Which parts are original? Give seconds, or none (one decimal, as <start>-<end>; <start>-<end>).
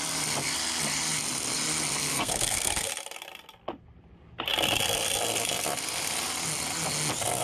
0.0-2.1; 2.9-7.4